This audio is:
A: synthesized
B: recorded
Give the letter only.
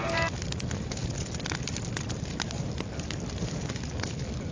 B